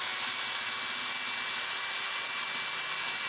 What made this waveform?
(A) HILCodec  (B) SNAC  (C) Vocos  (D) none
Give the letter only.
D